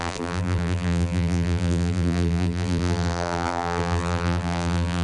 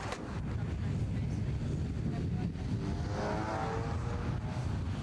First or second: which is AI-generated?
first